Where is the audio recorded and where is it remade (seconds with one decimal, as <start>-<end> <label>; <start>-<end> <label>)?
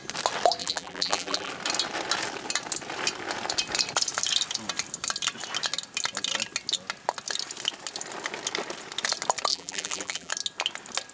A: 0.0-0.6 recorded; 0.6-1.5 remade; 1.5-9.5 recorded; 9.5-10.3 remade; 10.3-11.1 recorded